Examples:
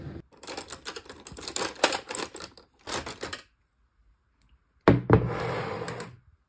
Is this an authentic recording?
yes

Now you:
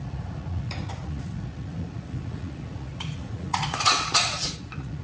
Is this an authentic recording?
no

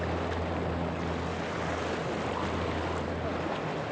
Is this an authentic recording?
yes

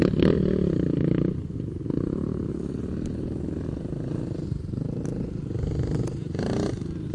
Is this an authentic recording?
yes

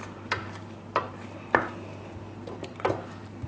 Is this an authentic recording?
yes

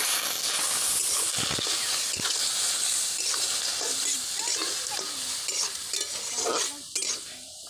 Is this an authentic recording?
yes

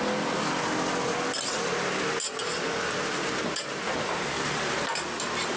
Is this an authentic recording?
yes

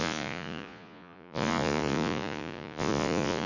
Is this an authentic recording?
no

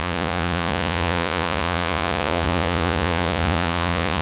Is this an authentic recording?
no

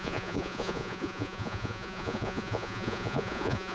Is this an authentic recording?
no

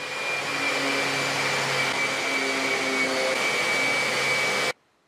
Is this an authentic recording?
yes